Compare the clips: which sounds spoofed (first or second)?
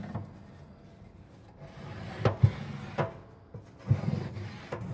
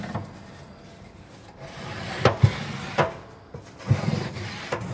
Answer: second